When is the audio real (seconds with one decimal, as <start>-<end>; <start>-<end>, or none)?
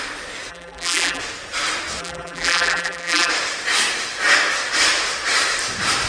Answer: 0.0-0.5; 1.2-2.0; 3.3-6.1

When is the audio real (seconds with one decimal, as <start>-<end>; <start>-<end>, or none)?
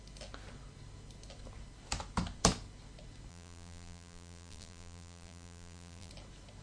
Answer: 0.0-3.3; 6.1-6.6